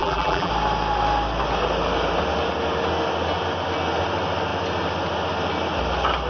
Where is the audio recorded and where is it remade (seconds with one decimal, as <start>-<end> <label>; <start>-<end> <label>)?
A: 0.0-0.5 remade; 0.5-6.3 recorded